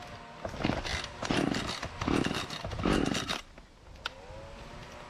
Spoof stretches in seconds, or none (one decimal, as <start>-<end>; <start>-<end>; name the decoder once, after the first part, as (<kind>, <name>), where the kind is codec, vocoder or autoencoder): none